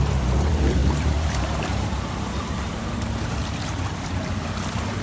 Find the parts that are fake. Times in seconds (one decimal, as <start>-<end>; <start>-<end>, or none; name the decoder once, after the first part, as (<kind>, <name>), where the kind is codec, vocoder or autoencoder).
0.8-3.8 (vocoder, BigVGAN v2)